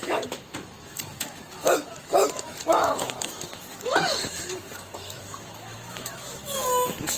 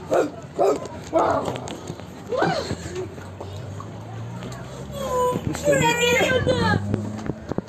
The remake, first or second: first